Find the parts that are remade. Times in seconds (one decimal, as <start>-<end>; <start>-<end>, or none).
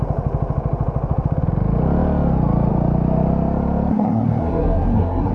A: 3.9-5.3